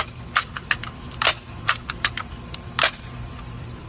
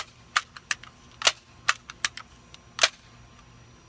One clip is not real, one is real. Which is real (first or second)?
second